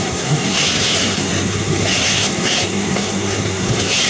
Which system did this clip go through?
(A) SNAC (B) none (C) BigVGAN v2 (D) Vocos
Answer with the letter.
A